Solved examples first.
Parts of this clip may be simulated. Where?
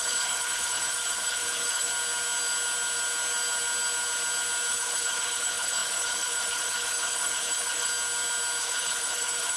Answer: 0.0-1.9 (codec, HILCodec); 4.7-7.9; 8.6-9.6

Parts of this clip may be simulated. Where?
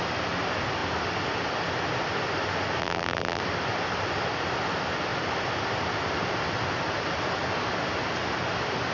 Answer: 2.8-3.4 (vocoder, BigVGAN v2)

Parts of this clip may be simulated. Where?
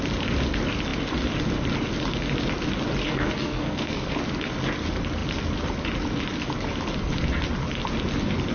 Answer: 3.0-4.2 (codec, SNAC)